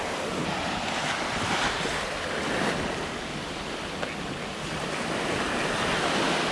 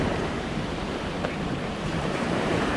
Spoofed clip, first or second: second